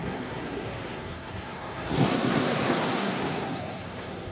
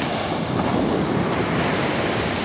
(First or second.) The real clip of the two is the second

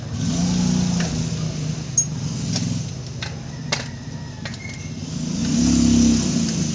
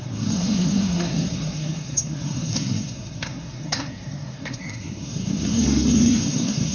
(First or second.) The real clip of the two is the first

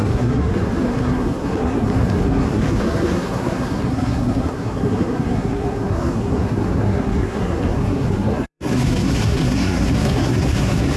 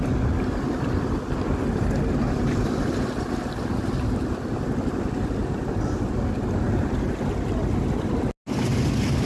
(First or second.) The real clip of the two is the second